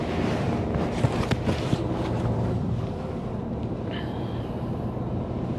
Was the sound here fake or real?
real